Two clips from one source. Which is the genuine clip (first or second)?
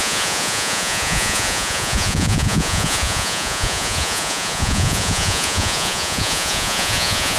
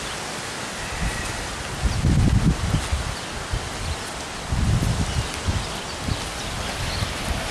second